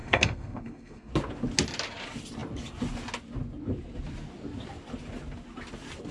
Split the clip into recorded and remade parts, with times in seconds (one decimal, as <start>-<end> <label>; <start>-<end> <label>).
0.0-1.1 remade; 1.1-6.1 recorded